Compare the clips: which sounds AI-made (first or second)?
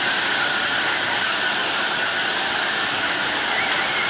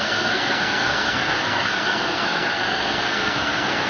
second